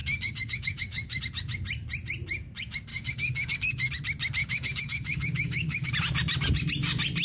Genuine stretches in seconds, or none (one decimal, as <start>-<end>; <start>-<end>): 1.2-2.9; 3.9-4.4; 5.9-7.2